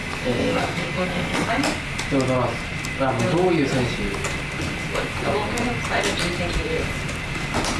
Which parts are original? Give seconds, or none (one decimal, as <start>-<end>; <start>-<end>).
1.5-7.8